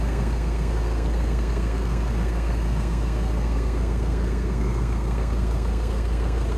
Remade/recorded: remade